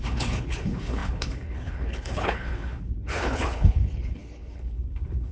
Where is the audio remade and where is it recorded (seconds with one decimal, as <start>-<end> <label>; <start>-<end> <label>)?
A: 0.0-5.3 remade